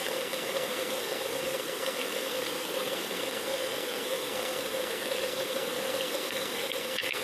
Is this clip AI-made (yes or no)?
yes